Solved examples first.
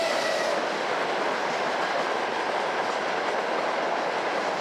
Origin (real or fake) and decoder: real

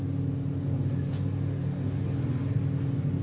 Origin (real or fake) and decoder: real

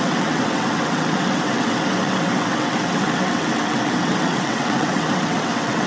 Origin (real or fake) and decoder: fake, vocoder, WaveNeXt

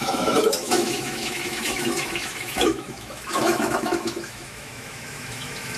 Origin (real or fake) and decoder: fake, autoencoder, DAC-VAE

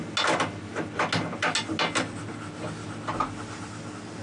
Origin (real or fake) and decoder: real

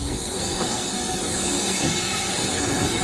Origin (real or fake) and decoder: fake, codec, SNAC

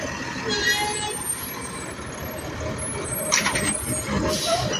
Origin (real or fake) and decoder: real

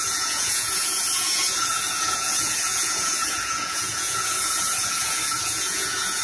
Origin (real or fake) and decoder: fake, vocoder, Vocos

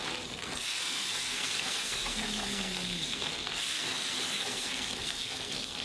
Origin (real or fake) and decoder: fake, codec, SNAC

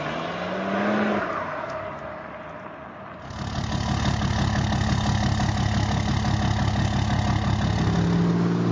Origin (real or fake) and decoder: real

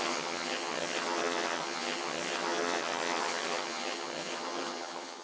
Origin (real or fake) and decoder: fake, vocoder, HiFi-GAN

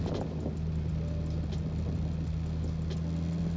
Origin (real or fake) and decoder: real